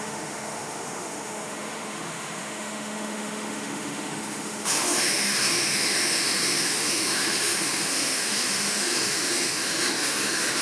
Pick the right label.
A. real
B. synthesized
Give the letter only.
B